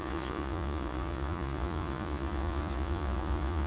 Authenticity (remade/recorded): remade